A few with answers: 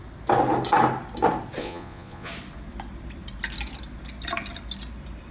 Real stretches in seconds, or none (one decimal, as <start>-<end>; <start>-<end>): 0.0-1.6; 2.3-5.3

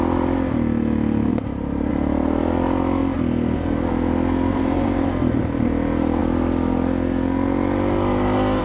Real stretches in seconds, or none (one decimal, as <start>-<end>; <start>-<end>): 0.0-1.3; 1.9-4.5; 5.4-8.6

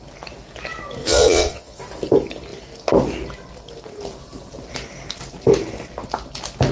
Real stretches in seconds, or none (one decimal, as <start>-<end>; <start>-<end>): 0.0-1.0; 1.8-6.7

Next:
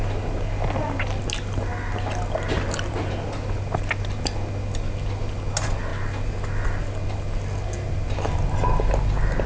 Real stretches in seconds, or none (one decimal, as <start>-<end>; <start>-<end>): 0.0-9.5